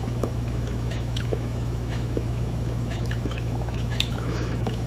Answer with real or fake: fake